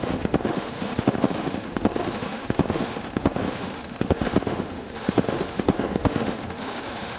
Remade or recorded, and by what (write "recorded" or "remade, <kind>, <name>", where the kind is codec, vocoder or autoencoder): remade, autoencoder, DAC-VAE